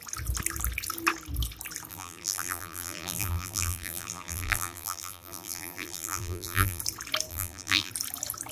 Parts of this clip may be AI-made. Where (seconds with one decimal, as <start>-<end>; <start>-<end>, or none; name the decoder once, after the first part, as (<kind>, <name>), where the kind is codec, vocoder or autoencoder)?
1.9-6.8 (vocoder, BigVGAN v2); 7.3-7.9